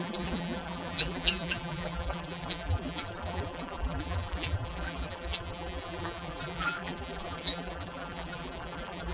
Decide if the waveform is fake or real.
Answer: fake